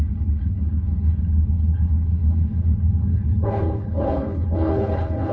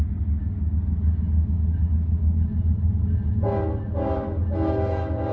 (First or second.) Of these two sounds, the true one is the second